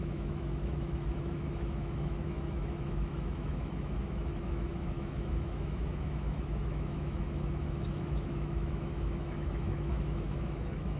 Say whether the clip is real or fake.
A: fake